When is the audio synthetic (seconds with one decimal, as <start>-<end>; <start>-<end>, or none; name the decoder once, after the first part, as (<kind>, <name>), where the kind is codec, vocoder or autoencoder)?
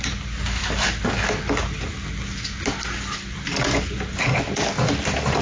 none